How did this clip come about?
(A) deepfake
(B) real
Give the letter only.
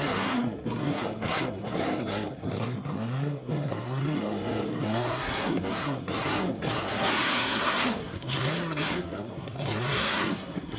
A